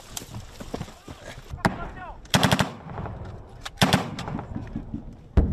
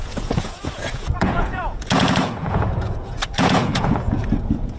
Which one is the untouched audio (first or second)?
first